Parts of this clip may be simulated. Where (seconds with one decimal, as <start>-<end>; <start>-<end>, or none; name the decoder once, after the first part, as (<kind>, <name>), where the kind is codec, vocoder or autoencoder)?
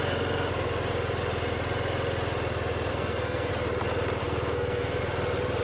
2.9-3.5 (codec, SNAC); 4.2-5.0